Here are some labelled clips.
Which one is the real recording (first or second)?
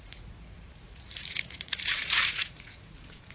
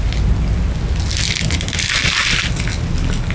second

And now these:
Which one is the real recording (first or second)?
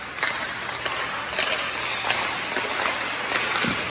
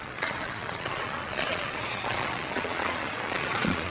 first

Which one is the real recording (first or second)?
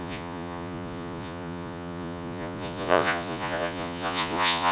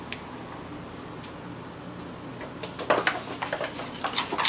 second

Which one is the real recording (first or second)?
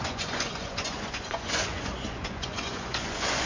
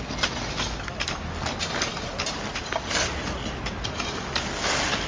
second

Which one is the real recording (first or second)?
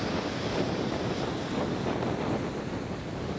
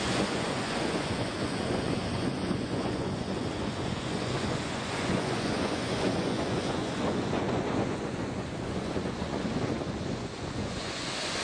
first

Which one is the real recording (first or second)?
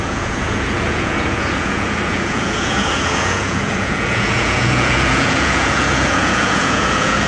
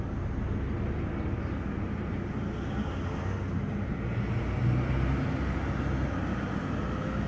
second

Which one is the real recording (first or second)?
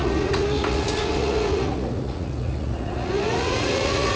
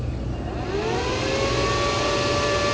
second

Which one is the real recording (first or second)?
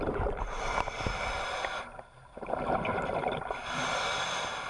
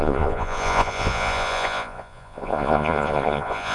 first